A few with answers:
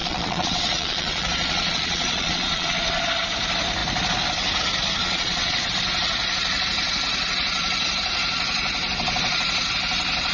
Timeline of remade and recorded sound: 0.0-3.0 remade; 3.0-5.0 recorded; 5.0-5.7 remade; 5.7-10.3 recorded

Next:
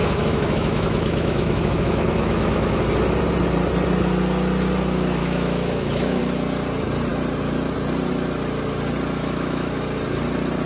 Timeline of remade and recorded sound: 0.0-2.8 remade; 2.8-5.2 recorded; 5.2-6.2 remade; 6.2-9.2 recorded; 9.2-9.7 remade; 9.7-10.7 recorded

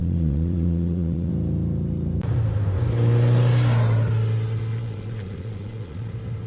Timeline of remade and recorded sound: 0.0-1.3 remade; 1.3-4.7 recorded; 4.7-6.1 remade; 6.1-6.5 recorded

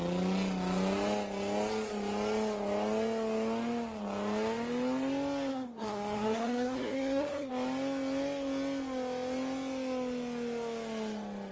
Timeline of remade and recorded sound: 0.0-5.5 recorded; 5.5-7.5 remade; 7.5-11.5 recorded

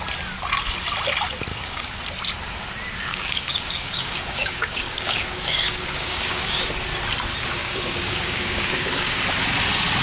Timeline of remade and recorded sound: 0.0-1.5 recorded; 1.5-2.0 remade; 2.0-3.1 recorded; 3.1-6.7 remade; 6.7-7.6 recorded; 7.6-9.2 remade; 9.2-10.0 recorded

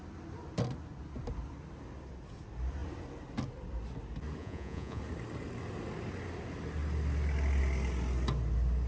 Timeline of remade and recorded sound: 0.0-4.4 recorded; 4.4-5.0 remade; 5.0-8.9 recorded

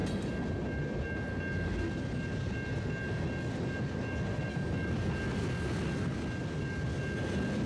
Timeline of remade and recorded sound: 0.0-7.7 recorded